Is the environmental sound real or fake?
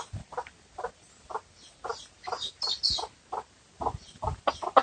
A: real